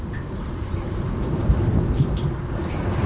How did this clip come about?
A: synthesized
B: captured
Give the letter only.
B